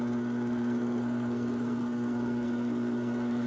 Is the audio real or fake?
fake